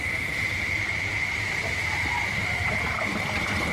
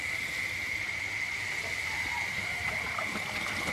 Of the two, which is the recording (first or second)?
second